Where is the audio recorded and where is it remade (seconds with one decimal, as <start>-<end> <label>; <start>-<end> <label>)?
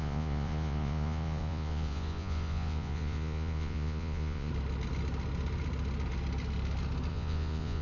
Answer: 0.0-4.5 remade; 4.5-7.1 recorded; 7.1-7.8 remade